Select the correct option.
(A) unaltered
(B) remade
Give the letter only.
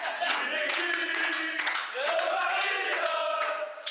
B